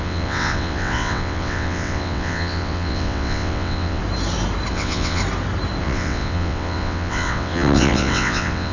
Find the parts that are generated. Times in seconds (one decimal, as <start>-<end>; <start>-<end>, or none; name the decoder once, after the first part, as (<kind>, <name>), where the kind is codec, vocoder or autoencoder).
0.0-4.0 (vocoder, WaveNeXt); 4.7-5.2; 5.8-8.7